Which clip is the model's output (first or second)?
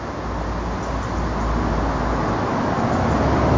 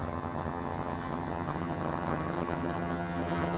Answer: second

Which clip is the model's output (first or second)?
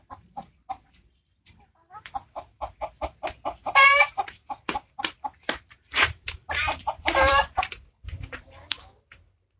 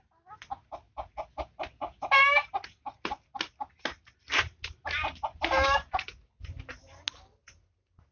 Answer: first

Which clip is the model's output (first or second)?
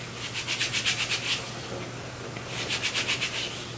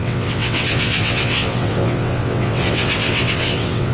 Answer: second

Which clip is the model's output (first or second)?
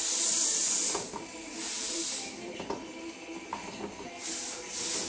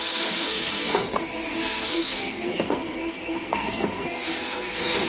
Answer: second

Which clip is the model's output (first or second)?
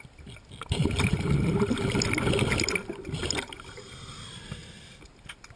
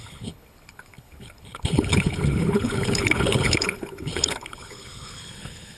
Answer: second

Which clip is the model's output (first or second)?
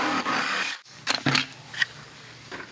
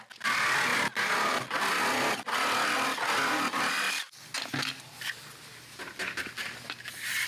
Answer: first